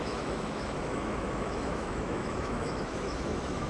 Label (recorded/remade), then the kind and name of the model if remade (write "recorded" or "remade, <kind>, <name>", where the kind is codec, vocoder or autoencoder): remade, autoencoder, DAC-VAE